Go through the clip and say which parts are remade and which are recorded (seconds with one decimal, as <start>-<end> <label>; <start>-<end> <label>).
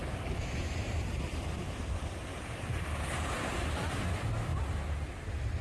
0.0-1.8 remade; 1.8-2.3 recorded; 2.3-3.9 remade; 3.9-5.6 recorded